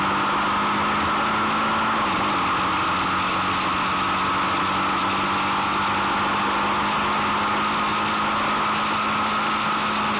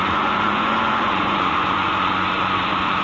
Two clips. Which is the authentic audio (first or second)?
first